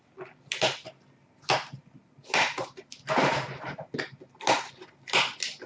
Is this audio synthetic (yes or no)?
no